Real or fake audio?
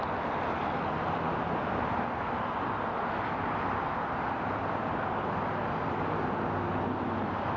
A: real